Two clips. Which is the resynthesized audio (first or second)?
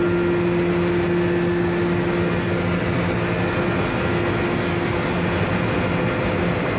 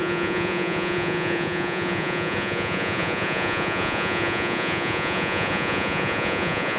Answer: second